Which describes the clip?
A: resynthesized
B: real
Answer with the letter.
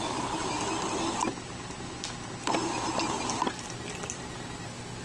B